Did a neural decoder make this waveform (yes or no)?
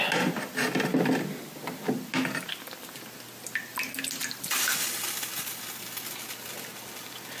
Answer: no